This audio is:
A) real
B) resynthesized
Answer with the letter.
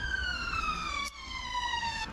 B